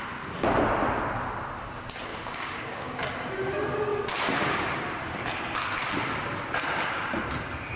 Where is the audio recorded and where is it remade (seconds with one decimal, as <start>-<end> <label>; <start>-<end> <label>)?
0.0-2.1 recorded; 2.1-2.9 remade; 2.9-7.8 recorded